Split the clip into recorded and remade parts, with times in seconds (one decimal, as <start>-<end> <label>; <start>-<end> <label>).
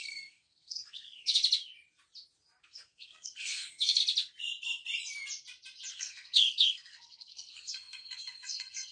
0.0-1.4 remade; 1.4-2.6 recorded; 2.6-4.0 remade; 4.0-5.9 recorded; 5.9-8.9 remade